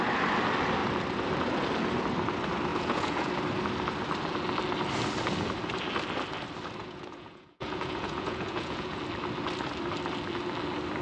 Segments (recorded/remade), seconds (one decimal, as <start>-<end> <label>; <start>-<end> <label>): 0.0-2.7 recorded; 2.7-3.3 remade; 3.3-6.8 recorded; 6.8-9.0 remade; 9.0-11.0 recorded